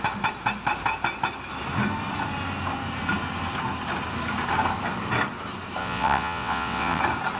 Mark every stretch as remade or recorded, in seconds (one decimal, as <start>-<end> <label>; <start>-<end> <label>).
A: 0.0-5.8 recorded; 5.8-7.0 remade; 7.0-7.4 recorded